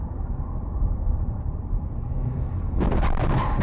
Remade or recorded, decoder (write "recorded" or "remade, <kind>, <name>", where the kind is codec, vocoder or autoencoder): remade, vocoder, BigVGAN v2